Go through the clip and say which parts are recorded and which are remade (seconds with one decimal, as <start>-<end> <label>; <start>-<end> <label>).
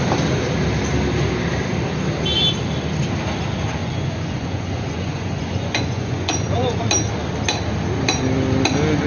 0.0-3.8 recorded; 3.8-6.8 remade; 6.8-9.1 recorded